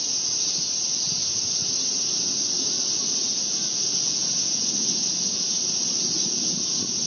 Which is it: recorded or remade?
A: recorded